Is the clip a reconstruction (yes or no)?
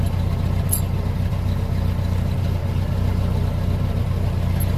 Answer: no